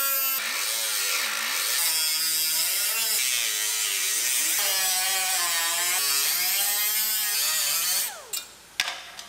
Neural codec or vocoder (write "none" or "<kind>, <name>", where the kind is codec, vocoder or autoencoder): none